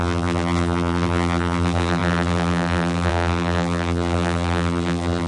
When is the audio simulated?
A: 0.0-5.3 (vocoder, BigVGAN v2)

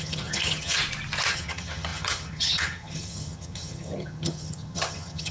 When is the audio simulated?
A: 0.0-0.8 (vocoder, HiFi-GAN); 1.3-5.3

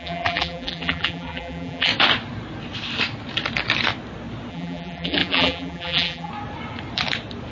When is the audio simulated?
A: 0.0-1.9 (vocoder, BigVGAN v2); 4.5-6.3

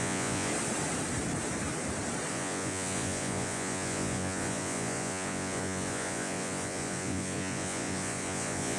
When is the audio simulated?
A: 0.0-0.5 (vocoder, Vocos); 2.3-8.8